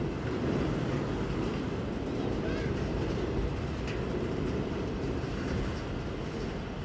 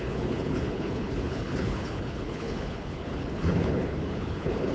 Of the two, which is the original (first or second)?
first